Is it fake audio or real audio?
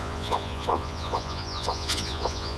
fake